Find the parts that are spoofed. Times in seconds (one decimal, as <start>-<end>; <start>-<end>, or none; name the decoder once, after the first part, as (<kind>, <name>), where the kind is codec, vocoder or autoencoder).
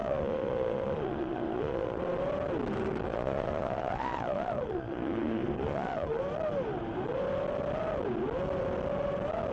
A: 0.0-2.0 (vocoder, Vocos); 3.1-6.2